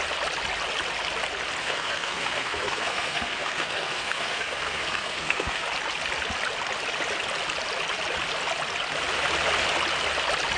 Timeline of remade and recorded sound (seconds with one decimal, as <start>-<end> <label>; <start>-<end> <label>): 0.0-1.6 recorded; 1.6-5.6 remade; 5.6-10.6 recorded